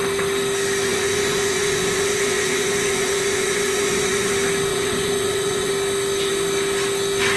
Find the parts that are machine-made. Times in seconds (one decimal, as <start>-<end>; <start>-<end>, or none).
0.9-4.3; 4.7-5.7